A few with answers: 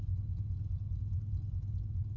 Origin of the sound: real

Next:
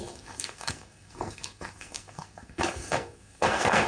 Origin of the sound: fake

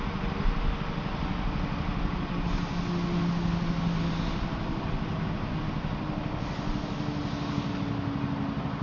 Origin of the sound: real